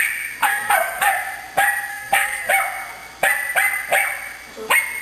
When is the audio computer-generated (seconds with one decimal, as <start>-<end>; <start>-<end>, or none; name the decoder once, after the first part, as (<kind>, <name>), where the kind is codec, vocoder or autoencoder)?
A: 0.4-1.1 (codec, SNAC); 1.9-2.5